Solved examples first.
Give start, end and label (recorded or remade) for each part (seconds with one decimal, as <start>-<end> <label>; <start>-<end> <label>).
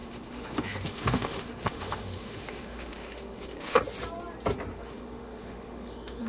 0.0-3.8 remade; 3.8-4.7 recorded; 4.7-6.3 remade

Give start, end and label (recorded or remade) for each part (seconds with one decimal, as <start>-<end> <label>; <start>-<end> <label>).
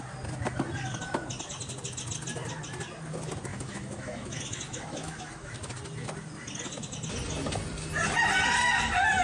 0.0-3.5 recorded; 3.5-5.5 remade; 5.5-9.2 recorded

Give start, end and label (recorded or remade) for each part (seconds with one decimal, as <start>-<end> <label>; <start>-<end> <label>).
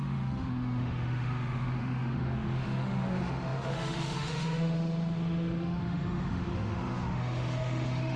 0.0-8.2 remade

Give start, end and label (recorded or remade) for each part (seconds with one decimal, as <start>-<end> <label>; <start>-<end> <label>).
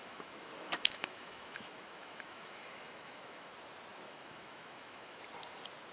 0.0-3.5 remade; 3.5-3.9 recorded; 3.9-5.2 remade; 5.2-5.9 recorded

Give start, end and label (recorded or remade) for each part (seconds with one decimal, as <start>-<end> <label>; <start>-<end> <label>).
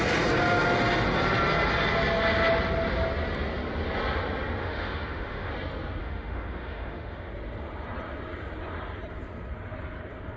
0.0-4.6 recorded; 4.6-5.5 remade; 5.5-6.0 recorded; 6.0-7.3 remade; 7.3-10.4 recorded